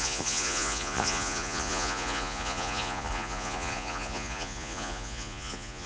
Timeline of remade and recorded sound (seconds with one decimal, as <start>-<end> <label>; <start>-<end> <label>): 0.0-5.9 remade

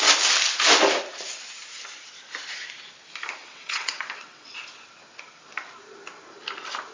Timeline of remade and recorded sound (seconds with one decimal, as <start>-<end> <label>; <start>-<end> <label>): 0.0-3.4 recorded; 3.4-4.5 remade; 4.5-6.9 recorded

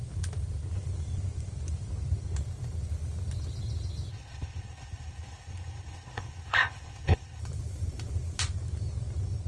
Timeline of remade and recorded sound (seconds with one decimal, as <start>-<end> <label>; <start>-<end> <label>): 0.0-4.1 recorded; 4.1-7.4 remade; 7.4-9.5 recorded